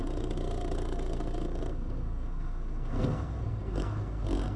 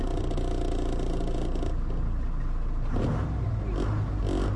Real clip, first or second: second